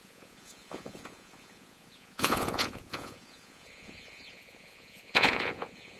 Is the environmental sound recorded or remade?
remade